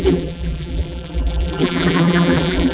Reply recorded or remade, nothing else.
remade